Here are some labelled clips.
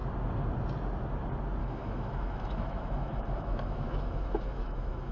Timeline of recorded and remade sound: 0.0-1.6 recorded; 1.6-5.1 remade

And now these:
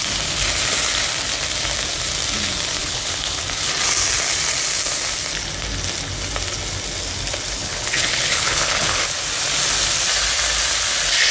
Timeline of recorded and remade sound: 0.0-2.8 recorded; 2.8-3.4 remade; 3.4-7.6 recorded; 7.6-9.0 remade; 9.0-11.3 recorded

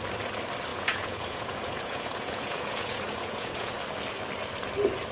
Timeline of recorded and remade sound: 0.0-0.7 recorded; 0.7-3.8 remade; 3.8-5.1 recorded

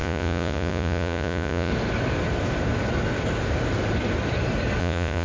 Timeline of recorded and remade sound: 0.0-1.7 remade; 1.7-4.8 recorded; 4.8-5.2 remade

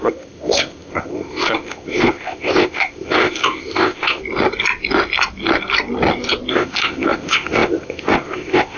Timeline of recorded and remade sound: 0.0-4.2 remade; 4.2-6.5 recorded; 6.5-8.8 remade